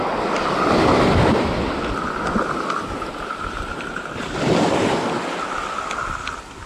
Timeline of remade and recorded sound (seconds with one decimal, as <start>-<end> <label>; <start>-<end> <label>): 0.0-3.7 recorded; 3.7-4.6 remade; 4.6-6.7 recorded